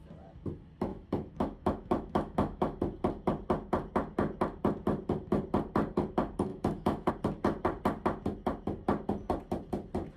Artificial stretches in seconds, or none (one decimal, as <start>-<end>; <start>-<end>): 0.9-2.8; 6.5-7.1

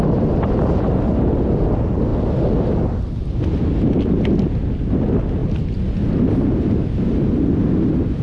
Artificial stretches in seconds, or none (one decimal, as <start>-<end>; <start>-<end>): none

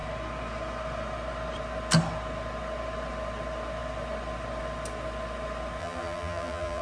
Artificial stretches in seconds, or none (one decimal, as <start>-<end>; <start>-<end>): 5.8-6.8

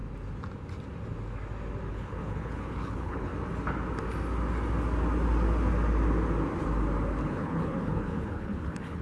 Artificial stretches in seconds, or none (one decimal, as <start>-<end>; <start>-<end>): 1.9-3.3; 7.2-9.0

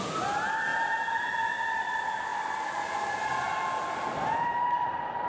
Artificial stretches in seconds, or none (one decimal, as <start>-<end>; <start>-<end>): none

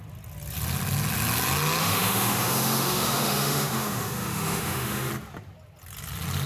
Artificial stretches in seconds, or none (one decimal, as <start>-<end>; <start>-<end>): 1.8-5.1

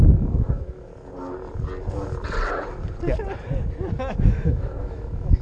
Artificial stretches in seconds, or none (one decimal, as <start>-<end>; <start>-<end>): 0.0-0.9; 4.1-5.4

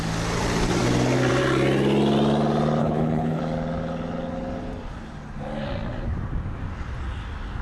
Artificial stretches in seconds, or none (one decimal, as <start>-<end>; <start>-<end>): 2.8-3.4